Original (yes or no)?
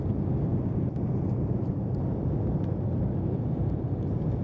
yes